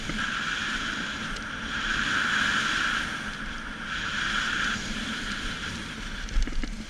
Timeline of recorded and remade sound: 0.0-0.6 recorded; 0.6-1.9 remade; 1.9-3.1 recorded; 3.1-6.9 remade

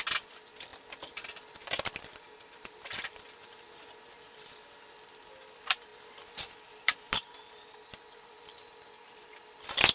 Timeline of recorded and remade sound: 0.0-9.9 remade

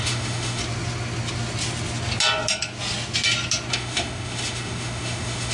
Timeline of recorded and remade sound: 0.0-0.6 remade; 0.6-3.7 recorded; 3.7-5.5 remade

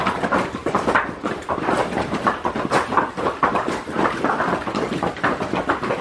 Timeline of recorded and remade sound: 0.0-0.6 recorded; 0.6-4.2 remade; 4.2-6.0 recorded

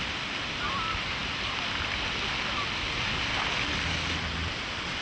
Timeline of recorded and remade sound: 0.0-5.0 recorded

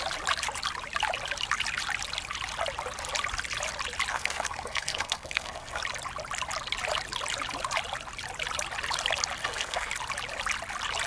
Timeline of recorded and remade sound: 0.0-4.1 recorded; 4.1-5.8 remade; 5.8-9.4 recorded; 9.4-9.9 remade; 9.9-11.1 recorded

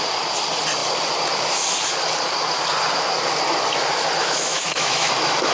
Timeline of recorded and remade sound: 0.0-4.2 recorded; 4.2-5.1 remade; 5.1-5.5 recorded

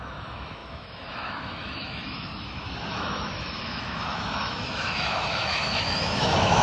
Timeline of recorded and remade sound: 0.0-2.3 remade; 2.3-2.9 recorded; 2.9-6.6 remade